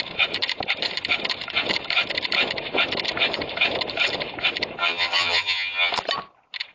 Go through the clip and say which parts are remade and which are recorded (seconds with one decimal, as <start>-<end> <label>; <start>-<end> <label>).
0.0-4.8 recorded; 4.8-5.9 remade; 5.9-6.7 recorded